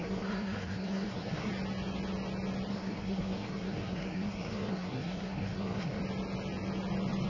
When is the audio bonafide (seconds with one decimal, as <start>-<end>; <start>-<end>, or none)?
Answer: 1.5-2.7; 6.0-7.3